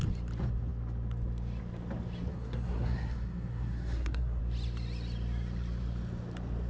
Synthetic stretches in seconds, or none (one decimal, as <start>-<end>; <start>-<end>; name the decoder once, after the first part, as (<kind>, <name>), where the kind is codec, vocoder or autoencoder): 2.3-4.4 (codec, SNAC)